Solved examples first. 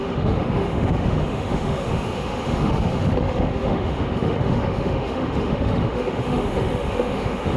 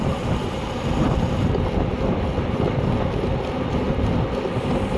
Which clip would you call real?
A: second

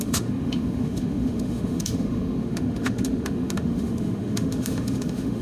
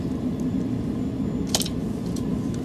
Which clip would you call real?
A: second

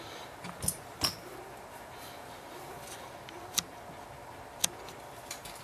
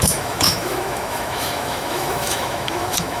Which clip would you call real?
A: first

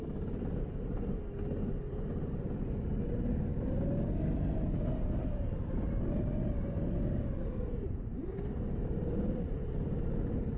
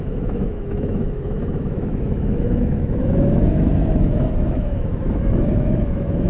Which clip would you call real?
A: first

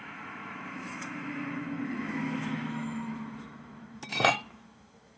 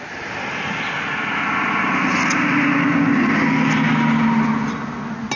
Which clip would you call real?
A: second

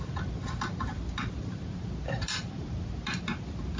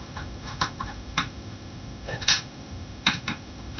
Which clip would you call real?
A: first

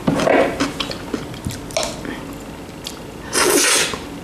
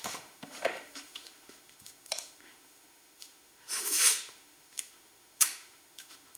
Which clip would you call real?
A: first